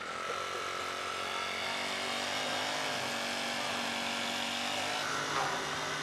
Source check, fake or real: real